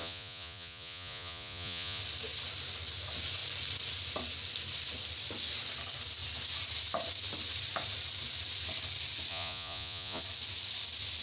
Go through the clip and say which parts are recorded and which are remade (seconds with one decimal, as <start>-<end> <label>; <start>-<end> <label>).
0.0-2.0 remade; 2.0-9.3 recorded; 9.3-10.2 remade; 10.2-11.2 recorded